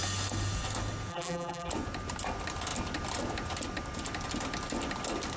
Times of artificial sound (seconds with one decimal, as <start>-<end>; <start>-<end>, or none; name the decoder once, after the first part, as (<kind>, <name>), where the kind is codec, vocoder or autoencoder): 1.1-1.7 (vocoder, BigVGAN v2)